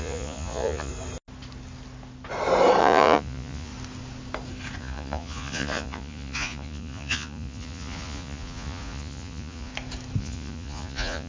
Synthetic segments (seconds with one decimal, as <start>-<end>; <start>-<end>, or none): 0.0-0.9; 2.8-3.7; 4.8-9.7; 10.2-11.3